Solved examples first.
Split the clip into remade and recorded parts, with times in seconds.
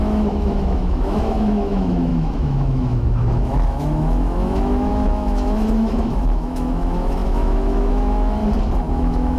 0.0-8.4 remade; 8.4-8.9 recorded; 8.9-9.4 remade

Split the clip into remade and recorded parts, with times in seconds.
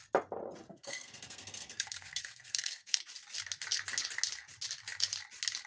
0.0-0.7 recorded; 0.7-3.0 remade; 3.0-5.7 recorded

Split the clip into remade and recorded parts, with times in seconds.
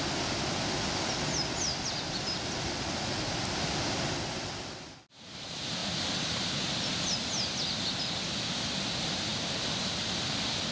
0.0-10.7 recorded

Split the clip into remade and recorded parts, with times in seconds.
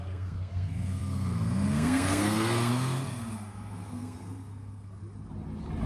0.0-5.0 remade; 5.0-5.9 recorded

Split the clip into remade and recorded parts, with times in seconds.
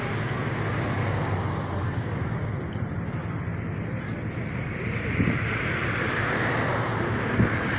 0.0-7.8 recorded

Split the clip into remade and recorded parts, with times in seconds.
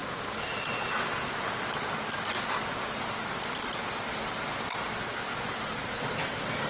0.0-6.7 recorded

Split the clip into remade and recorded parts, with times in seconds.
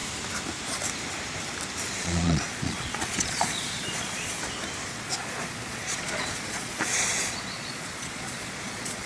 0.0-1.9 recorded; 1.9-4.4 remade; 4.4-4.9 recorded; 4.9-9.1 remade